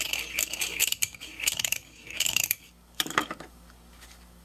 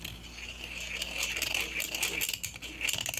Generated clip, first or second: first